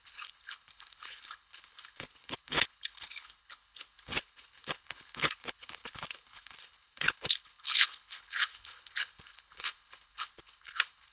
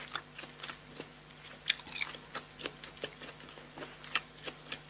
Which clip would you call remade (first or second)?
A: first